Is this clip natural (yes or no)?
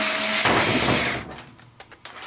yes